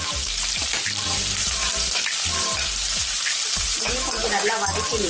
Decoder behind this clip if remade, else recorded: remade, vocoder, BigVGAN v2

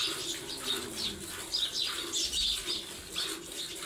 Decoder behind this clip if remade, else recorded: recorded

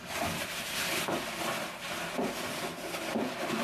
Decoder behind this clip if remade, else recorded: remade, vocoder, BigVGAN v2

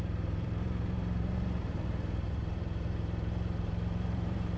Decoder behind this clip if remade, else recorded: remade, vocoder, BigVGAN v2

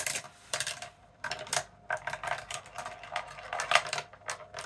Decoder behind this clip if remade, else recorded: recorded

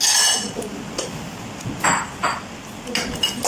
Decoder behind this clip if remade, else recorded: recorded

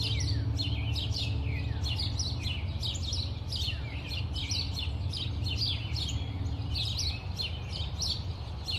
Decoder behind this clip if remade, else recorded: recorded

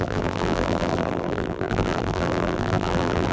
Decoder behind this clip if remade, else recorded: remade, vocoder, BigVGAN v2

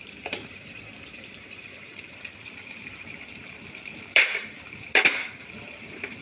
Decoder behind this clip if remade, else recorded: remade, vocoder, BigVGAN v2